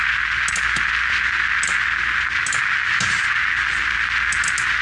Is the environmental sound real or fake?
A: real